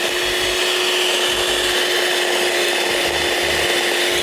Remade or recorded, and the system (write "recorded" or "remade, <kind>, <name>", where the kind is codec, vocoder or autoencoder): recorded